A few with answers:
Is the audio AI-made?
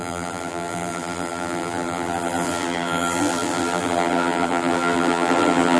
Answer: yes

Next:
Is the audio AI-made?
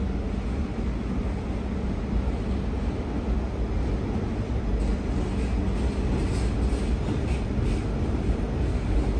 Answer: no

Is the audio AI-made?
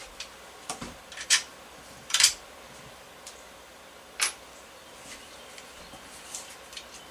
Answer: yes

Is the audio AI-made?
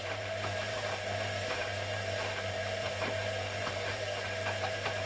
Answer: yes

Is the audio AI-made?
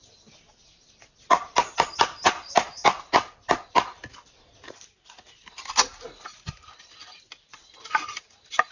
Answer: no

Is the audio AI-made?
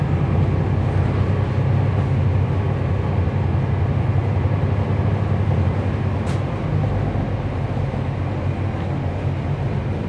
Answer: no